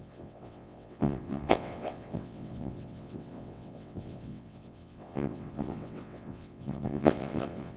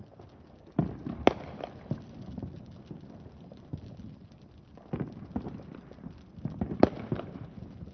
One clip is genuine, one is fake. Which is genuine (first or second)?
second